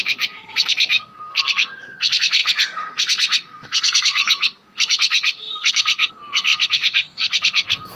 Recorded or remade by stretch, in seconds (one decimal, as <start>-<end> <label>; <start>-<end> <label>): 0.0-8.0 remade